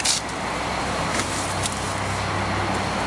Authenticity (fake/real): real